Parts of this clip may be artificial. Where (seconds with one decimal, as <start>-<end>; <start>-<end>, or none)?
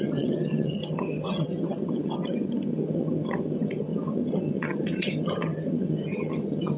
0.0-6.8